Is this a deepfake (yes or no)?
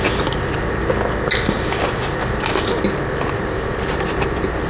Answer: no